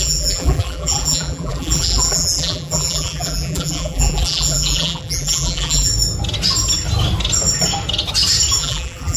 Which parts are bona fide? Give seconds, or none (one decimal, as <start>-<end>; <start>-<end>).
5.9-8.6